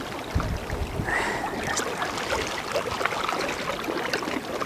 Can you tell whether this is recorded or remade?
recorded